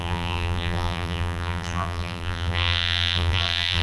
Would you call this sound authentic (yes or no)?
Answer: no